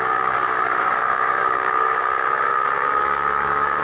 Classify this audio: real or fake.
fake